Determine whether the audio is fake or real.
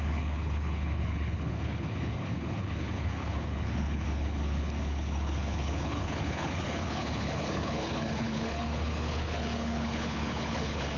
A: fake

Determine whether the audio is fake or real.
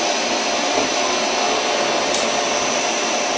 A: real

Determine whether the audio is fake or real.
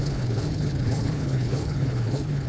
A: fake